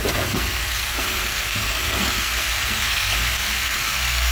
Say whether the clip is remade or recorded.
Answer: remade